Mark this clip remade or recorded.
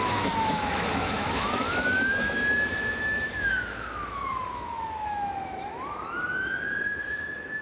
remade